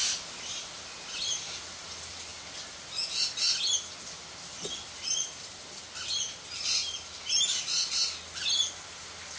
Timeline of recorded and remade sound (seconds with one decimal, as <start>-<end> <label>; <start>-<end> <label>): 0.0-1.2 recorded; 1.2-2.3 remade; 2.3-7.4 recorded; 7.4-8.0 remade; 8.0-9.0 recorded; 9.0-9.4 remade